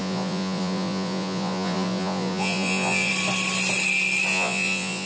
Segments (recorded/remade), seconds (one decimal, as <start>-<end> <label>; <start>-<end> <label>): 0.0-3.1 remade; 3.1-4.3 recorded; 4.3-5.1 remade